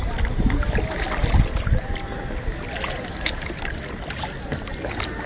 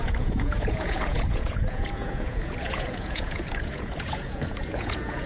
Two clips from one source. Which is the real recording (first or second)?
first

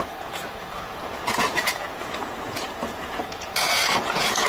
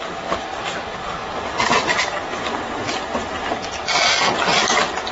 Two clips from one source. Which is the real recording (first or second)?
second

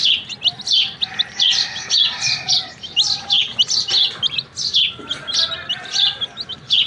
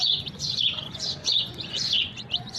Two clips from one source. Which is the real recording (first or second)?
first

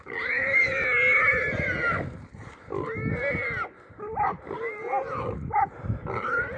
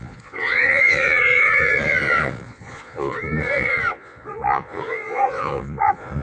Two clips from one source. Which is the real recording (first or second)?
first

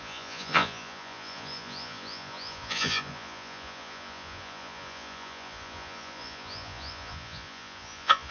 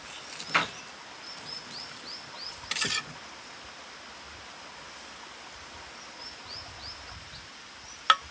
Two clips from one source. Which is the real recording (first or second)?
second